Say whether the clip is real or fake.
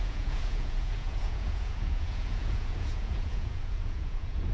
fake